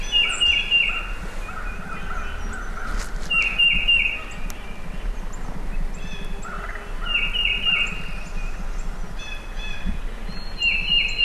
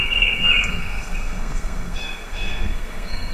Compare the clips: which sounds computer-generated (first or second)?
second